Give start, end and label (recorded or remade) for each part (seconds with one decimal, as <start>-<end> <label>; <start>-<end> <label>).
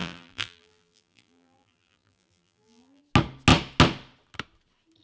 0.0-3.0 remade; 3.0-5.0 recorded